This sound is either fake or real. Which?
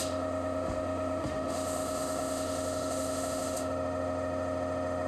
fake